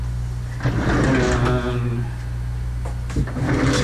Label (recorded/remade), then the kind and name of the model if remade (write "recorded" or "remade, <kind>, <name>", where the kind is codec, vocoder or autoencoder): recorded